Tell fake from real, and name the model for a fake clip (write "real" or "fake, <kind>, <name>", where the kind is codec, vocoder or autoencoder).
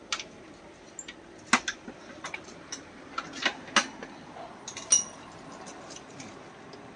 real